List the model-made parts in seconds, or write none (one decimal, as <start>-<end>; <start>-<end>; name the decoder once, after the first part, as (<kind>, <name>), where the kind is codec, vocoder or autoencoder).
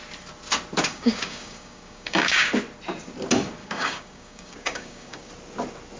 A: 0.9-2.5 (codec, DAC); 3.6-5.3